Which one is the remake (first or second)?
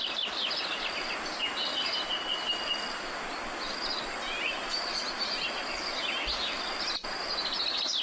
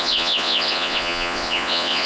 second